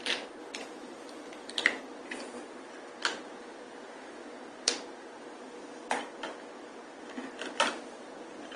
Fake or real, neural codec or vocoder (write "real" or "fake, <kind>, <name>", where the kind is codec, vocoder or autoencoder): fake, vocoder, BigVGAN v2